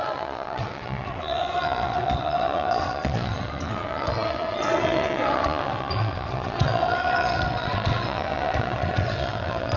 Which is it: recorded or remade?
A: remade